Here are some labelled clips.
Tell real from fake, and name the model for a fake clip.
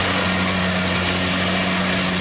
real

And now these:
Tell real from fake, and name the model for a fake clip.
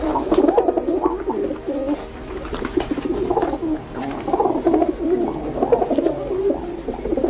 real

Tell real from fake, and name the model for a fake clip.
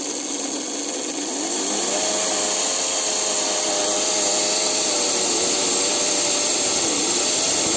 real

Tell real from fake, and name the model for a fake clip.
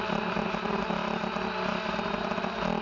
real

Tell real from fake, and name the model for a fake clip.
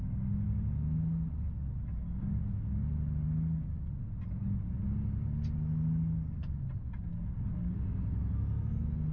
real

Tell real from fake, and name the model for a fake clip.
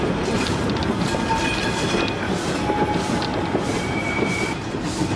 real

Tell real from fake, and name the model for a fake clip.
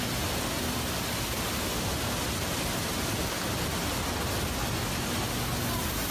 real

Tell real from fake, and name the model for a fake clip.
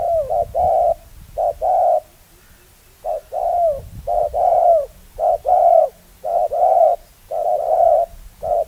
real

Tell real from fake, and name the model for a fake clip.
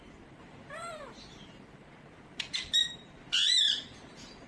fake, vocoder, BigVGAN v2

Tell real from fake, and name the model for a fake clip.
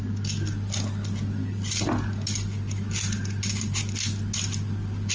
real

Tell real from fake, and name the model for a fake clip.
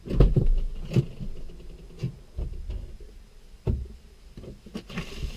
real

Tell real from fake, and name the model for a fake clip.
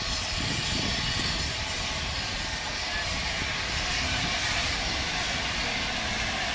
real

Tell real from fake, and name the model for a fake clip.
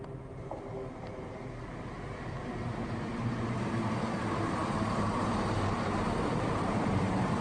fake, vocoder, BigVGAN v2